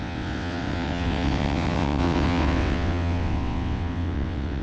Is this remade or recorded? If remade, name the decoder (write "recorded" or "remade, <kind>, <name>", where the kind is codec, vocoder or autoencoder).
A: remade, vocoder, WaveNeXt